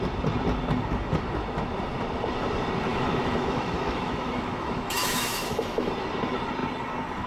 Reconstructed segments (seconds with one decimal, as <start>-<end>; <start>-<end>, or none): 2.9-5.9